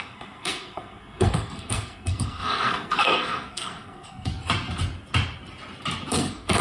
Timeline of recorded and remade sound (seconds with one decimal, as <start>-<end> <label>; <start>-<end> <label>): 0.0-4.3 remade; 4.3-6.1 recorded; 6.1-6.6 remade